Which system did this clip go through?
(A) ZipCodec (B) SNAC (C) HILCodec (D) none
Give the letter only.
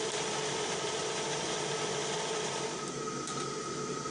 D